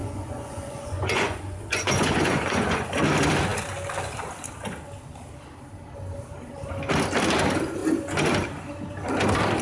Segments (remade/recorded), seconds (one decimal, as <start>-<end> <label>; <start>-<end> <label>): 0.0-2.9 remade; 2.9-9.6 recorded

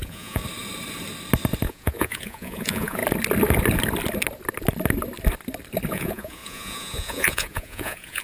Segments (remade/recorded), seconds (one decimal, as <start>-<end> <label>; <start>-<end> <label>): 0.0-0.4 remade; 0.4-1.7 recorded; 1.7-3.0 remade; 3.0-5.9 recorded; 5.9-8.2 remade

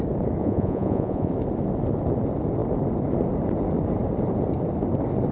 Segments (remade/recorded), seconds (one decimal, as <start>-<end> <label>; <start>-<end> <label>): 0.0-0.4 recorded; 0.4-1.3 remade; 1.3-5.3 recorded